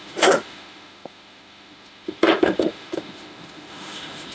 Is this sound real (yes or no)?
no